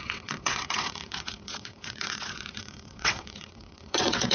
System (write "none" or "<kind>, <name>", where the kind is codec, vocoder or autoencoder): vocoder, WaveNeXt